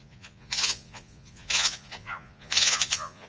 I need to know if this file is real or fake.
fake